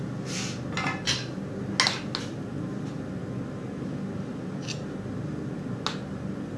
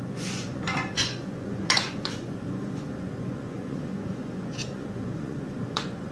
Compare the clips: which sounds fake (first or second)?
second